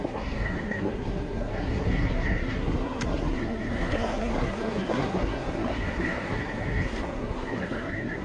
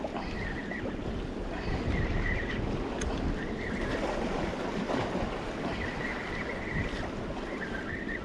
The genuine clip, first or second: second